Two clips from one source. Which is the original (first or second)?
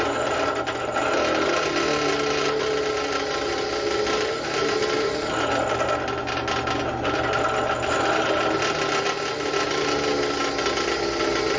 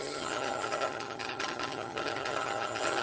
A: first